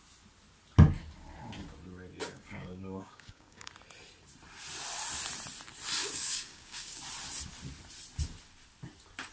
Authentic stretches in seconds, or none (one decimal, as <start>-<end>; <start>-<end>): 0.0-2.2; 3.7-6.0; 7.0-9.3